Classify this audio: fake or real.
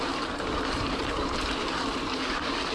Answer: fake